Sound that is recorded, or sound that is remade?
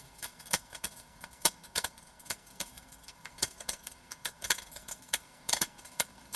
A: remade